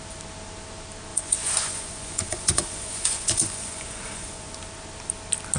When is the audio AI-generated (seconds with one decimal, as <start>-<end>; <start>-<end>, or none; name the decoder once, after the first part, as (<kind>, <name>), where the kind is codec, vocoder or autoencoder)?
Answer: 1.1-4.5 (vocoder, Vocos)